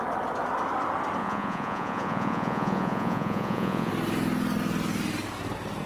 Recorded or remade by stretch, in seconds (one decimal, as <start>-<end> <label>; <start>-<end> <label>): 0.0-1.2 recorded; 1.2-3.9 remade; 3.9-5.9 recorded